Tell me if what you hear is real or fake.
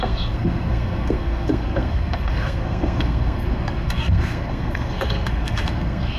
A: fake